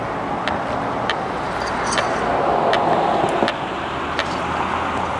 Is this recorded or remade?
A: recorded